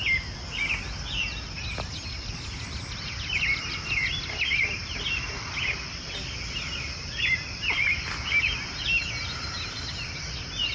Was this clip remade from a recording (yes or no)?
no